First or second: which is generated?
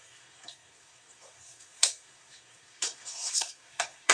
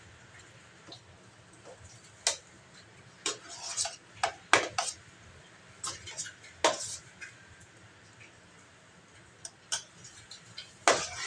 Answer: first